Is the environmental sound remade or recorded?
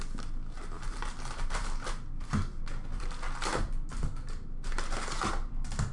recorded